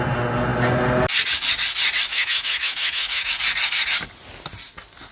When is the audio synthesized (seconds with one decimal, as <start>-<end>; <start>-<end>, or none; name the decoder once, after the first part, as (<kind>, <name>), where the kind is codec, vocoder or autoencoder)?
2.1-3.3 (autoencoder, DAC-VAE)